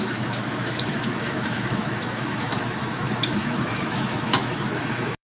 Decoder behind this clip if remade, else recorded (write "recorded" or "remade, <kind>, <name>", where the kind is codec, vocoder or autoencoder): remade, autoencoder, DAC-VAE